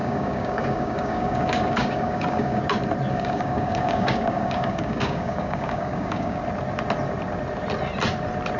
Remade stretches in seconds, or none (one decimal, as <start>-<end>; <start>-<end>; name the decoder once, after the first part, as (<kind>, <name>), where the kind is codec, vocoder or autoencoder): 0.0-2.6 (codec, DAC); 3.1-6.4